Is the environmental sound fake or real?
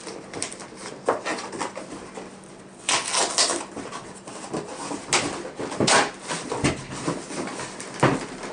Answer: real